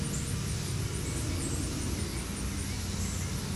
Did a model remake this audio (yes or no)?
no